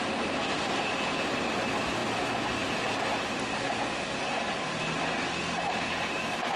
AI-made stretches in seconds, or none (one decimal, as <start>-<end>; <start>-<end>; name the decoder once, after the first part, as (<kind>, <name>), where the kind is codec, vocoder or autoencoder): none